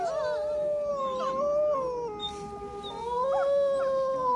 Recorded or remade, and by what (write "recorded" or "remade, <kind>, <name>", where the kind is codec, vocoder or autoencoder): recorded